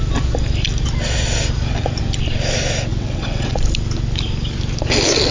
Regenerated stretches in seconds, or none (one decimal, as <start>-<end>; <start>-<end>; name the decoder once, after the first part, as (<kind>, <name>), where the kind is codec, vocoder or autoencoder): 2.9-3.6 (vocoder, WaveNeXt)